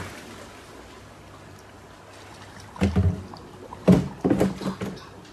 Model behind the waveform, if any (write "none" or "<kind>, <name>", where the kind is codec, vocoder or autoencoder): none